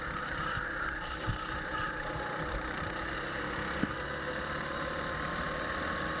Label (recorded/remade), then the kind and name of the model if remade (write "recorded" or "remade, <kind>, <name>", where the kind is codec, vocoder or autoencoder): recorded